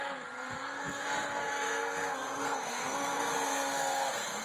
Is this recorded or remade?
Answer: remade